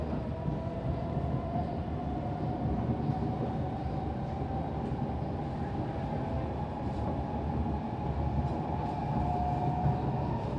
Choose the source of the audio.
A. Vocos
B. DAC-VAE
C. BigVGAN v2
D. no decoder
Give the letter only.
D